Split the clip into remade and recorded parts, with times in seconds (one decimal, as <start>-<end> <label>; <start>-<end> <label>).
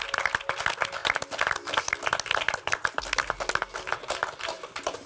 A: 0.0-5.1 recorded